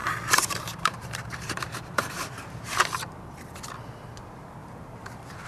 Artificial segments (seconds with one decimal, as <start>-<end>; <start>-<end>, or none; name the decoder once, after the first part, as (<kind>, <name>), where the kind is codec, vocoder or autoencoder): 0.0-2.9 (vocoder, BigVGAN v2); 4.6-5.5

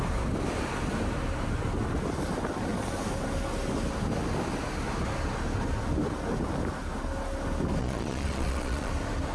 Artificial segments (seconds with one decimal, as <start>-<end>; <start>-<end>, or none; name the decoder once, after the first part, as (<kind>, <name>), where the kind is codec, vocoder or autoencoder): 7.8-8.9 (vocoder, Vocos)

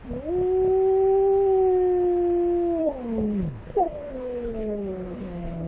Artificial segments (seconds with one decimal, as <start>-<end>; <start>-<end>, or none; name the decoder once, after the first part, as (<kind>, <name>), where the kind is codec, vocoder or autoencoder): 2.8-5.7 (codec, HILCodec)

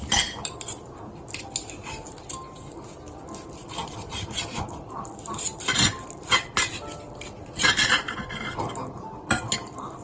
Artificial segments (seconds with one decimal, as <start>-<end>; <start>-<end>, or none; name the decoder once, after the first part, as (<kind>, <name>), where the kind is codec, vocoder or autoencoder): none

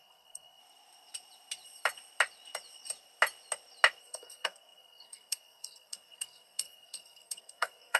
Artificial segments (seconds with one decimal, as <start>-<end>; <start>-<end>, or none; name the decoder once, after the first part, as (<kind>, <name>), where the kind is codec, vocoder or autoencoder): 0.0-0.6 (codec, SNAC); 4.0-8.0

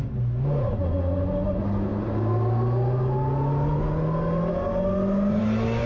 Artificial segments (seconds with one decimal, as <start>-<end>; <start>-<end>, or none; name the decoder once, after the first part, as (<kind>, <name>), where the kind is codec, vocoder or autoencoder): none

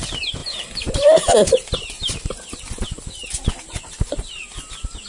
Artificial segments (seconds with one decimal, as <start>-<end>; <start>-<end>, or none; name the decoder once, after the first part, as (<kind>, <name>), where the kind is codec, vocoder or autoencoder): none

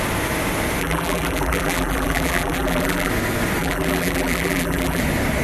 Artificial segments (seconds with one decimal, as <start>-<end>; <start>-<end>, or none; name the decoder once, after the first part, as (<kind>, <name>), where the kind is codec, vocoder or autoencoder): 0.8-3.1 (vocoder, BigVGAN v2); 3.6-5.0